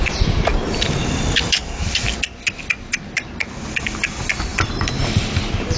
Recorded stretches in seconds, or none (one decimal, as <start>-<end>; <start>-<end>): 1.6-3.8